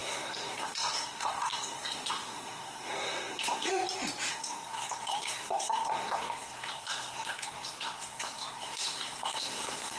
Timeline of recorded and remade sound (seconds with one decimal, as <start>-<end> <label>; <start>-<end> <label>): 0.0-3.7 remade; 3.7-4.3 recorded; 4.3-10.0 remade

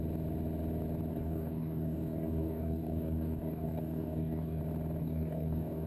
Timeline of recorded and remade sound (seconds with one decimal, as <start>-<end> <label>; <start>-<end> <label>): 0.0-1.1 recorded; 1.1-4.6 remade; 4.6-5.0 recorded; 5.0-5.9 remade